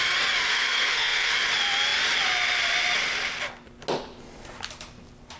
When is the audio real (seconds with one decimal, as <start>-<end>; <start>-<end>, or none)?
0.0-0.5; 1.3-5.4